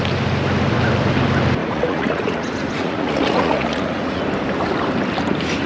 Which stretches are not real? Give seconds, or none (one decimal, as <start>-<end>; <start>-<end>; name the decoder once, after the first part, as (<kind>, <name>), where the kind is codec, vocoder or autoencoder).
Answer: 1.6-4.2 (vocoder, Vocos)